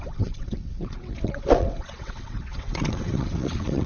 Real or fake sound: fake